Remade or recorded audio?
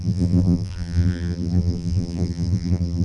remade